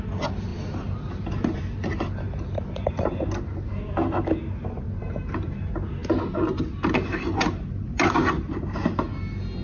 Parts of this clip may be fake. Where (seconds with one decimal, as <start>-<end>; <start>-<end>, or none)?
none